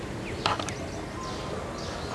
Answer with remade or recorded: recorded